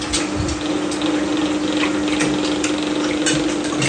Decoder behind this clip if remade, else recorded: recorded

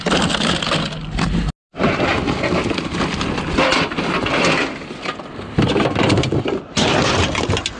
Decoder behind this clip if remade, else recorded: recorded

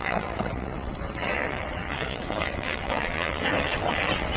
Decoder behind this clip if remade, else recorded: remade, vocoder, WaveNeXt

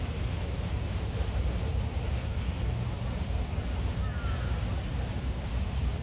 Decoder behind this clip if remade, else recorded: recorded